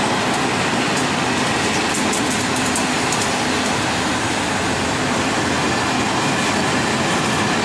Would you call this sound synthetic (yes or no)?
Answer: no